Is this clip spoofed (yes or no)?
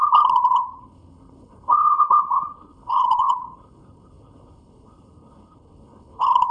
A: yes